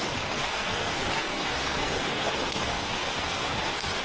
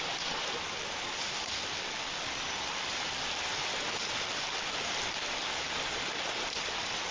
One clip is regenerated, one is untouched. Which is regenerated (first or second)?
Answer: first